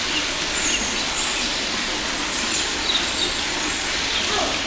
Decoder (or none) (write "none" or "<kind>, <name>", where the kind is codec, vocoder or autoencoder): none